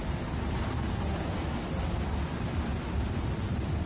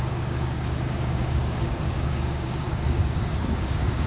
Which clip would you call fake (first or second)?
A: second